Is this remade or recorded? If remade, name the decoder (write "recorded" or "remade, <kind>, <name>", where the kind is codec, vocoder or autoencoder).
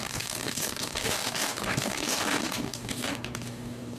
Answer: remade, codec, DAC